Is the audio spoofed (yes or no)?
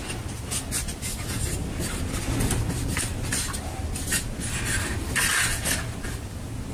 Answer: no